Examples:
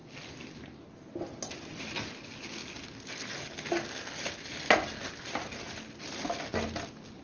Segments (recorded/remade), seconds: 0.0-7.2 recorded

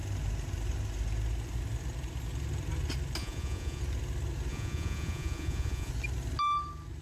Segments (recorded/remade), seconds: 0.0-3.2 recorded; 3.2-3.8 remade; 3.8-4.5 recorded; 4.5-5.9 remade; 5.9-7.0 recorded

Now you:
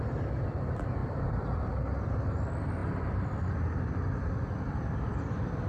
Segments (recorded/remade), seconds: 0.0-1.0 recorded; 1.0-1.7 remade; 1.7-2.8 recorded; 2.8-3.5 remade; 3.5-5.7 recorded

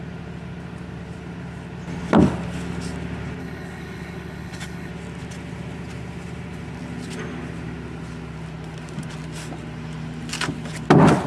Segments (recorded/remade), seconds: 0.0-3.4 recorded; 3.4-4.9 remade; 4.9-11.3 recorded

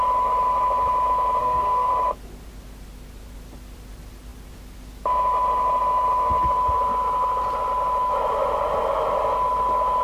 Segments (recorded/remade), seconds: 0.0-1.4 recorded; 1.4-1.9 remade; 1.9-10.0 recorded

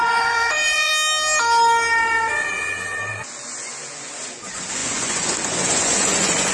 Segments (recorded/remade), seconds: 0.0-0.9 remade; 0.9-3.1 recorded; 3.1-6.5 remade